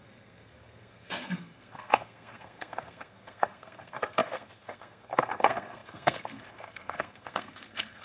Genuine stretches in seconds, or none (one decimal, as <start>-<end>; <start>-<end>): none